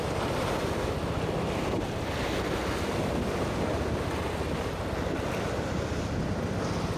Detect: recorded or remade recorded